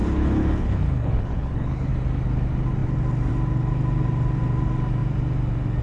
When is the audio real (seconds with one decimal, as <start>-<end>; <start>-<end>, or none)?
1.9-5.8